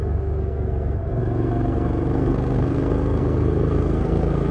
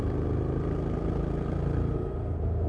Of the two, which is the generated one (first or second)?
first